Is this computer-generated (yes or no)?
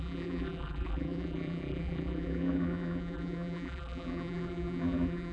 yes